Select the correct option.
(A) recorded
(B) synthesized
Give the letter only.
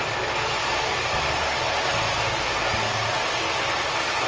B